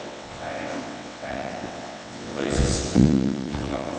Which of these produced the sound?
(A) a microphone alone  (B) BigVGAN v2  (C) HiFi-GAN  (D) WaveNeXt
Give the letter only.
D